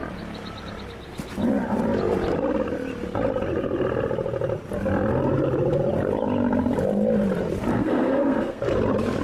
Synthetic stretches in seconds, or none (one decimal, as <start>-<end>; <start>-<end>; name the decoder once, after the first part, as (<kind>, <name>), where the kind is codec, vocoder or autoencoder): 7.7-8.6 (codec, SNAC)